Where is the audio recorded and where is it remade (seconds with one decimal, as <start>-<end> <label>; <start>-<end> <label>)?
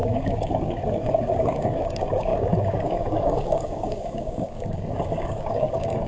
0.0-6.1 remade